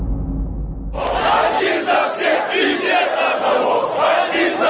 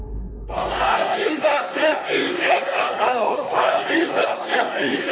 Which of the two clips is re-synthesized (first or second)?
second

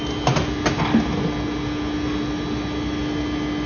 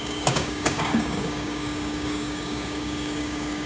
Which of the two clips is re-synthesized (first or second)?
second